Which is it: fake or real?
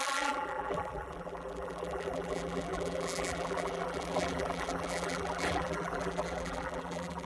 fake